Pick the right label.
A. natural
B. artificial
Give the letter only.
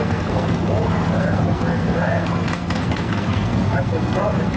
B